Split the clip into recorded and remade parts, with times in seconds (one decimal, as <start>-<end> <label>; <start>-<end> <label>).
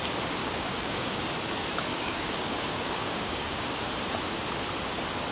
0.0-0.4 recorded; 0.4-1.2 remade; 1.2-1.9 recorded; 1.9-3.9 remade; 3.9-5.3 recorded